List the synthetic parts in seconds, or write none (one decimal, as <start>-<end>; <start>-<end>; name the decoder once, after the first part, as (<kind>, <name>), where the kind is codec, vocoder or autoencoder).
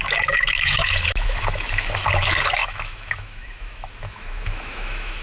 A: 0.0-5.2 (autoencoder, DAC-VAE)